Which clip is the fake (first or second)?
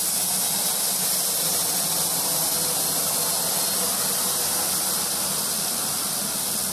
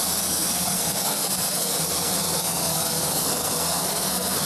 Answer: second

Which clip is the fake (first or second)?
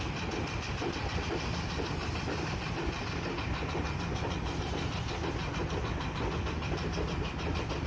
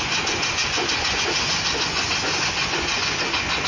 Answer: second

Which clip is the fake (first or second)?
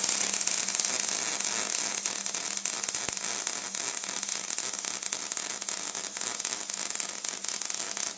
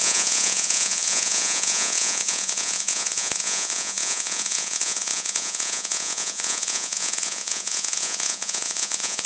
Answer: second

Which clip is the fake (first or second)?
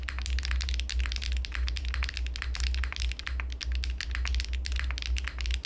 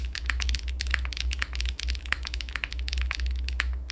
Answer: second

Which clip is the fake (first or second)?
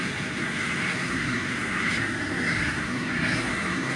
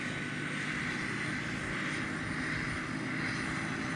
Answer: first